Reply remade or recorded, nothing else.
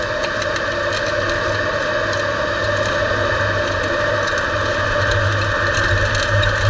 recorded